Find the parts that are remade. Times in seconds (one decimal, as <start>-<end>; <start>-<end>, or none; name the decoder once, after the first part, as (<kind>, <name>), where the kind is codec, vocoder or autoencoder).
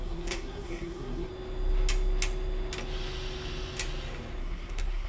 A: 0.0-1.3 (codec, SNAC); 4.4-5.1